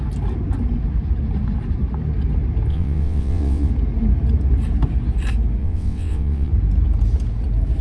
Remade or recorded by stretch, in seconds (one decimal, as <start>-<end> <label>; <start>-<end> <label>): 0.0-2.7 recorded; 2.7-3.7 remade; 3.7-5.6 recorded; 5.6-6.5 remade; 6.5-7.8 recorded